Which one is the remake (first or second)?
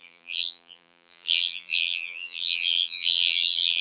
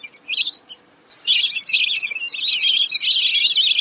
first